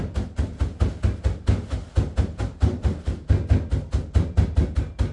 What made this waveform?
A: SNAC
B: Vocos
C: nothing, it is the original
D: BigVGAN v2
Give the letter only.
C